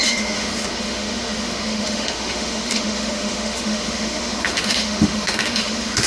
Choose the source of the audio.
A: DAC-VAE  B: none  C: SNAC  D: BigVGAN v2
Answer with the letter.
A